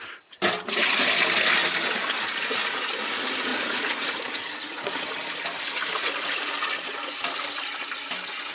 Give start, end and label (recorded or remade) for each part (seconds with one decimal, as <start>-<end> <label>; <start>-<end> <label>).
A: 0.0-3.5 recorded; 3.5-5.0 remade; 5.0-6.0 recorded; 6.0-6.5 remade; 6.5-8.5 recorded

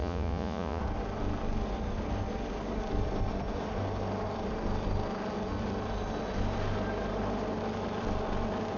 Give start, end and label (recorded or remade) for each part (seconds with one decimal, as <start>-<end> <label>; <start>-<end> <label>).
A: 0.0-0.8 remade; 0.8-8.8 recorded

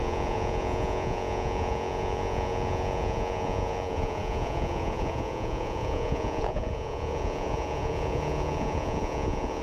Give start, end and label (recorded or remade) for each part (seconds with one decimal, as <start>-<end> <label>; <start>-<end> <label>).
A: 0.0-9.6 remade

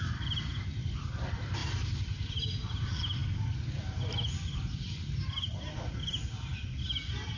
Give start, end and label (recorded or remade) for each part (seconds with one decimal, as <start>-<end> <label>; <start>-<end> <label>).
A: 0.0-7.4 recorded